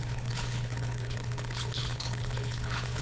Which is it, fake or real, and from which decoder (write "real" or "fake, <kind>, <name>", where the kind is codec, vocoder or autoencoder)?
fake, codec, HILCodec